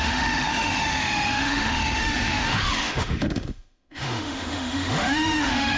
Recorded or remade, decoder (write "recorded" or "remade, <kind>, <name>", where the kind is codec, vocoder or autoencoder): remade, autoencoder, DAC-VAE